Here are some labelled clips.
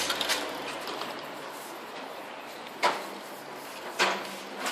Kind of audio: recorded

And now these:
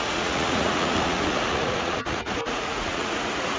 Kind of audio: remade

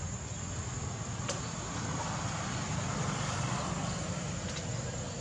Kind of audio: recorded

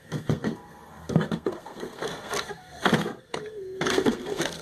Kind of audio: remade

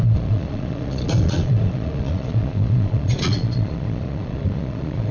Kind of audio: remade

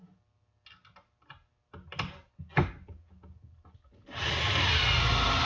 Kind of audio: recorded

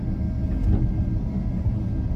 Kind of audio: recorded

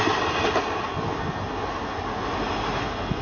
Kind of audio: recorded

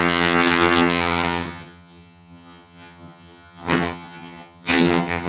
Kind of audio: remade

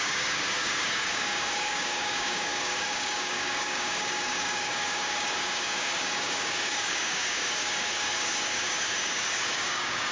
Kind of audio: remade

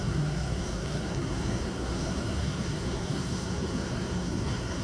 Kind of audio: remade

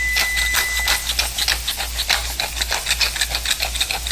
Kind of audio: recorded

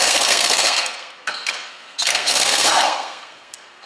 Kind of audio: remade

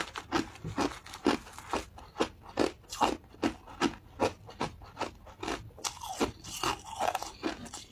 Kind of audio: recorded